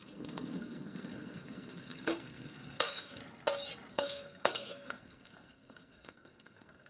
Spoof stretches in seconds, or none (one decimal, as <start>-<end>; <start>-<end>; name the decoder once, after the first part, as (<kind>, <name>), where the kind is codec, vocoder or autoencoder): 0.0-3.2 (codec, SNAC); 3.9-6.9